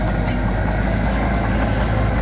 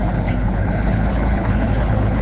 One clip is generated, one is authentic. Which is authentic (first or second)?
first